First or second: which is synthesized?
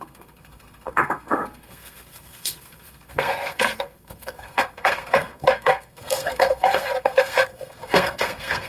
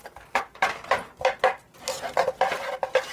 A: first